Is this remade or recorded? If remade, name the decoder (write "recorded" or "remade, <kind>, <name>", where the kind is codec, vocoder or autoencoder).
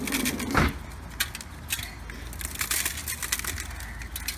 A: recorded